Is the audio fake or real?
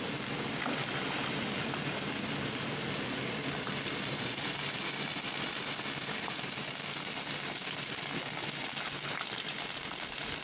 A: real